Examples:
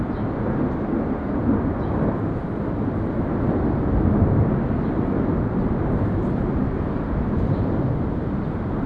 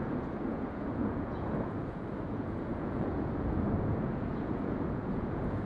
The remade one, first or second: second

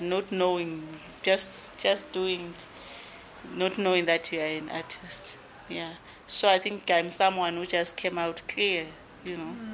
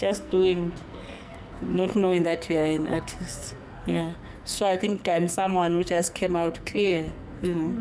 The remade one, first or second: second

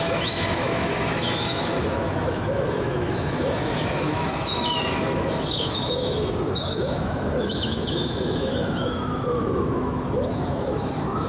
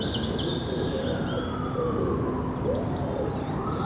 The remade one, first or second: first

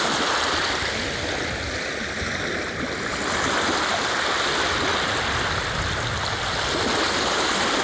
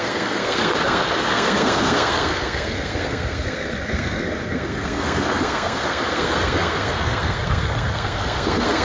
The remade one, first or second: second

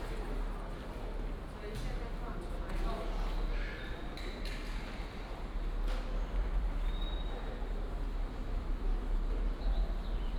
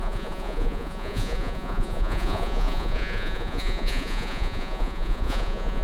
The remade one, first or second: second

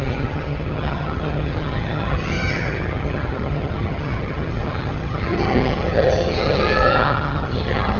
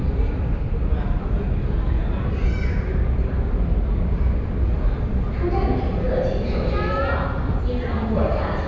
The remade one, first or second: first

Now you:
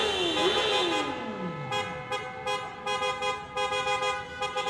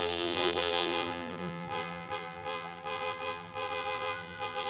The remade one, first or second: second